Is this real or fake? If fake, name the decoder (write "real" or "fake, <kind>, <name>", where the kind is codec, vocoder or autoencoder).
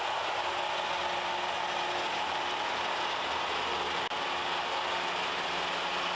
real